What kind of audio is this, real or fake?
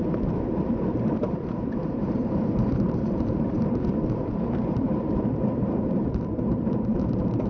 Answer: fake